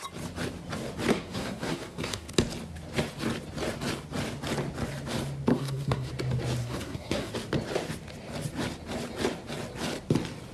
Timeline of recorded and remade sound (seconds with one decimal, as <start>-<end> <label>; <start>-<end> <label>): 0.0-1.1 recorded; 1.1-2.3 remade; 2.3-5.5 recorded; 5.5-6.1 remade; 6.1-6.6 recorded; 6.6-7.3 remade; 7.3-10.5 recorded